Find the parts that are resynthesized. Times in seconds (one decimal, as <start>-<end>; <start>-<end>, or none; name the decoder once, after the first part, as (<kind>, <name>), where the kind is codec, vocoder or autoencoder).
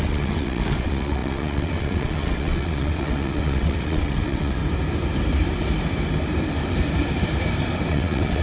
0.0-4.6 (vocoder, WaveNeXt); 7.9-8.4